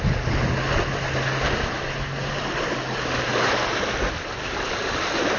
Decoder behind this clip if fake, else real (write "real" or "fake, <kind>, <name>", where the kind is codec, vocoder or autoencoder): real